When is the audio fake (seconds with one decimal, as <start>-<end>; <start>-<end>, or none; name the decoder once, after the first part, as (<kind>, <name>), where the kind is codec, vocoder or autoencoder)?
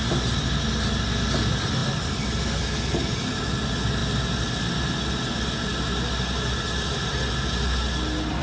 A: none